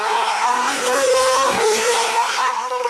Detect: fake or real fake